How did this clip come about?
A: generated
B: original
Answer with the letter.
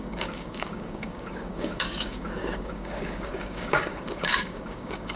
A